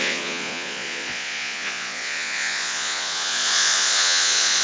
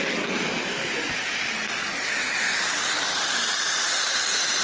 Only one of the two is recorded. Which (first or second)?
second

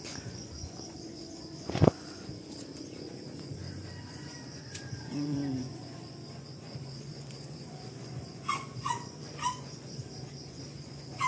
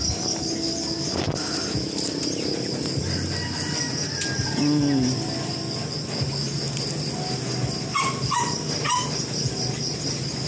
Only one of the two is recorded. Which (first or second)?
second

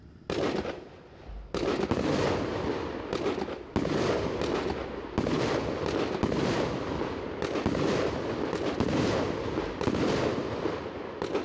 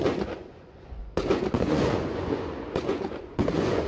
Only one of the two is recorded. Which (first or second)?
first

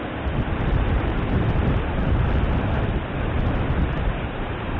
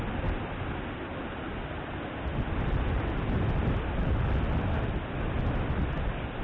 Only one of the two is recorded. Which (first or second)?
second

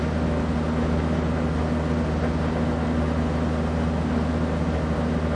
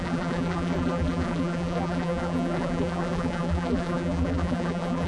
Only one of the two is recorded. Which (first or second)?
first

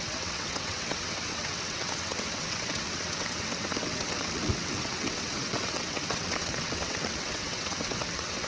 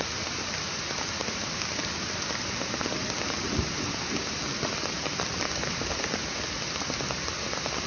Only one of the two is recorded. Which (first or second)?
second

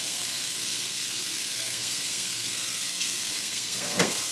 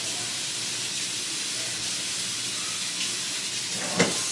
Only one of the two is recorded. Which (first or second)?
second